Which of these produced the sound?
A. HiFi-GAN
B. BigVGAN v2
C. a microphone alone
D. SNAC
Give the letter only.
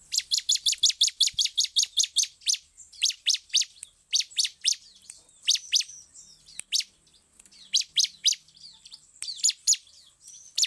B